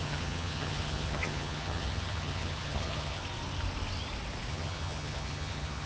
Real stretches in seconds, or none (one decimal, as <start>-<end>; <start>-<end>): 3.2-4.5